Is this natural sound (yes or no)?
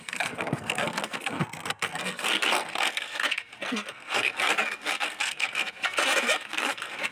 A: no